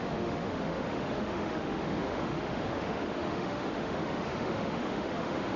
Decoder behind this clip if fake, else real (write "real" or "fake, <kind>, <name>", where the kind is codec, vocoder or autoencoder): fake, autoencoder, DAC-VAE